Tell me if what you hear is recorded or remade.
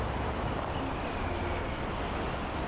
recorded